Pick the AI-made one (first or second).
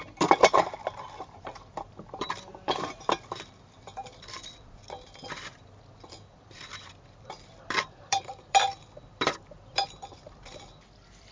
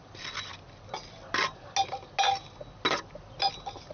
first